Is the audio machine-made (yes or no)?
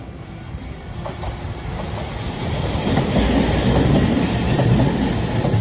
no